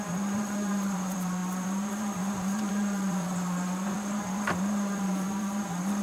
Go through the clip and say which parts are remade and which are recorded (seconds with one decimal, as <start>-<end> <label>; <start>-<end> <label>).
0.0-6.0 remade